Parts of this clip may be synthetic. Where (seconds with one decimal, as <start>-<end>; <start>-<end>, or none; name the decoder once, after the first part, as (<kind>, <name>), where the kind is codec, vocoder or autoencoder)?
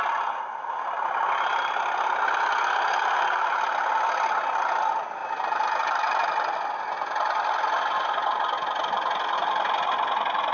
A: none